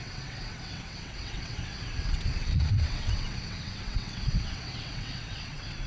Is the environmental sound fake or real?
fake